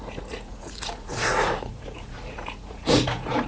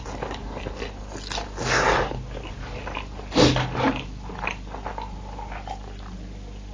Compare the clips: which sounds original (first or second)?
second